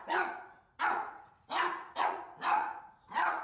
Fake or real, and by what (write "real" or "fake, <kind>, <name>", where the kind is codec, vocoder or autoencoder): fake, vocoder, Vocos